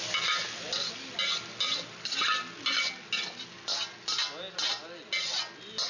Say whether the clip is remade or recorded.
recorded